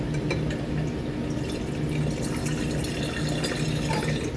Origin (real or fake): real